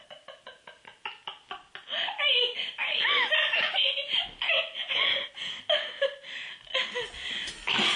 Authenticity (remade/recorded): recorded